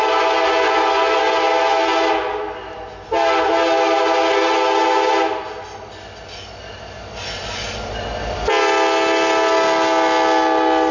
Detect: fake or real real